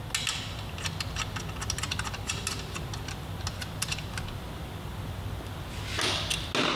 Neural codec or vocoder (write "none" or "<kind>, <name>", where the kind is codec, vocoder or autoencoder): none